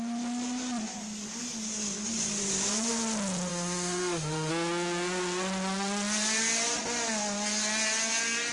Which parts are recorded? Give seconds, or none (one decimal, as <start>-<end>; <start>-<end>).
0.0-3.5; 4.5-8.5